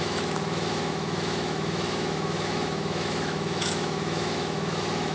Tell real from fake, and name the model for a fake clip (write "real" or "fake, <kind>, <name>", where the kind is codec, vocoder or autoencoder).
fake, autoencoder, DAC-VAE